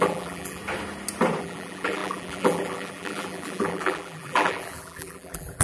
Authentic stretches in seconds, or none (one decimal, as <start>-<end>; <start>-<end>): 0.6-1.4